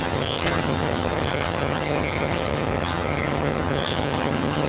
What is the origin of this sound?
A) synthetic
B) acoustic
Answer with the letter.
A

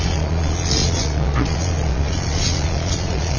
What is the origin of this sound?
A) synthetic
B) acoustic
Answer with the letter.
A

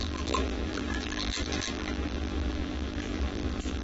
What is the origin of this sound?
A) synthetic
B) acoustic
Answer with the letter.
A